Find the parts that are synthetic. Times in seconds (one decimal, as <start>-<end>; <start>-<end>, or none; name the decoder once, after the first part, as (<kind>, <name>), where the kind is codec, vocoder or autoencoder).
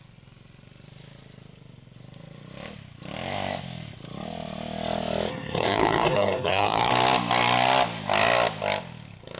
5.3-6.9 (codec, SNAC)